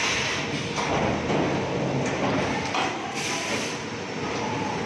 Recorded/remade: recorded